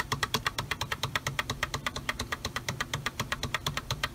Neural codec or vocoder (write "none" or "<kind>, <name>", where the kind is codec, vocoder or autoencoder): vocoder, BigVGAN v2